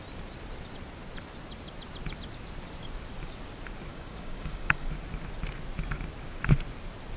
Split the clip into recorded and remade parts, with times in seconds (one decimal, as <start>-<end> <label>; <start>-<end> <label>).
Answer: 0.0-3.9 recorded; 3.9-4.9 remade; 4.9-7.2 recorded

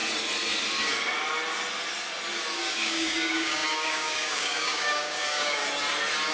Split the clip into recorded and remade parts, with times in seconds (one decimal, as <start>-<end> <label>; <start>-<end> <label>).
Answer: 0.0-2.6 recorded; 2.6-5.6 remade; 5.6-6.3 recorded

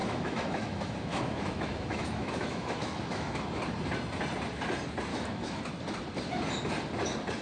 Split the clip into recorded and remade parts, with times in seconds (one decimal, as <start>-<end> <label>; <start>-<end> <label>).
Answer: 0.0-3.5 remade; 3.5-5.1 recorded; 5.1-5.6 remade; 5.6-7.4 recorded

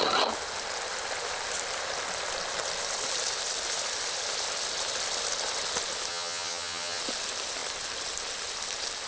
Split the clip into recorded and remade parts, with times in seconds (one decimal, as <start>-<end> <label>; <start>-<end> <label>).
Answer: 0.0-6.1 recorded; 6.1-7.0 remade; 7.0-9.1 recorded